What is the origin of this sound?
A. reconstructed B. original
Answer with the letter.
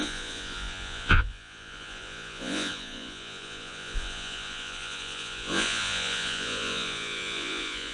A